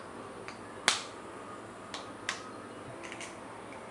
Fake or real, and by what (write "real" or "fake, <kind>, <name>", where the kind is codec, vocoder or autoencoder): real